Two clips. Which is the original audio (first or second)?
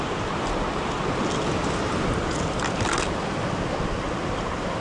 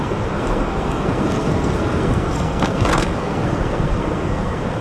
first